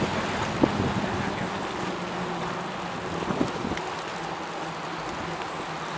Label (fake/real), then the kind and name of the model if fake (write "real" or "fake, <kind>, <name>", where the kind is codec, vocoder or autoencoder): real